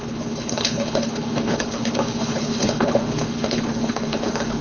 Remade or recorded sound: remade